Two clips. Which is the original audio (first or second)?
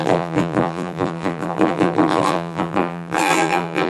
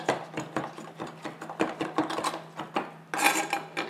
second